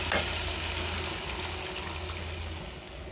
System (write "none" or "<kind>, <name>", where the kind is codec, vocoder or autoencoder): none